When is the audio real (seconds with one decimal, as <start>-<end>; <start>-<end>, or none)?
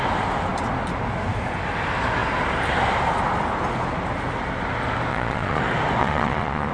0.0-5.1; 5.6-6.0